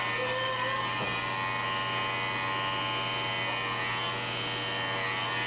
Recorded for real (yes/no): yes